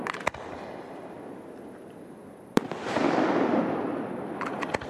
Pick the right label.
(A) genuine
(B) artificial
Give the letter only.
A